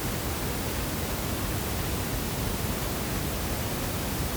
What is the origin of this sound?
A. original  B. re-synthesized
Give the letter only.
A